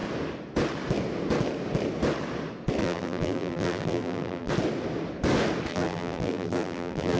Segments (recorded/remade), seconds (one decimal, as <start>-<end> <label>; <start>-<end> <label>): 0.0-2.8 recorded; 2.8-4.5 remade; 4.5-5.7 recorded; 5.7-7.2 remade